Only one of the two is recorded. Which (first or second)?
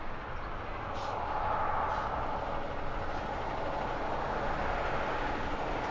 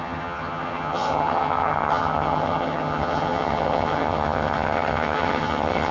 first